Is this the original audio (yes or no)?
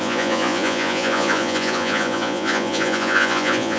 no